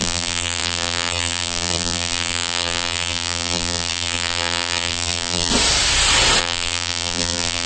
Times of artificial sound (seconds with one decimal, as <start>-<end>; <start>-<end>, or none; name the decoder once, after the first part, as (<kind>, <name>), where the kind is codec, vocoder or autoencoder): 0.0-5.5 (vocoder, BigVGAN v2); 6.4-7.7